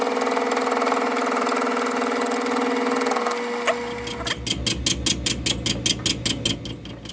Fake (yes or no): no